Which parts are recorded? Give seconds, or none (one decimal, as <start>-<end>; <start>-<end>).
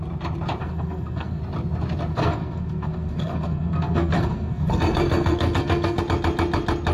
0.0-0.6; 1.4-2.1; 6.0-6.9